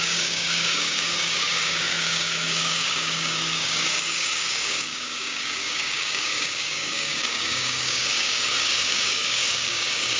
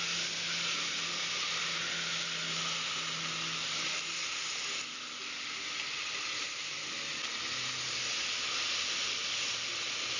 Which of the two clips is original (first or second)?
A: second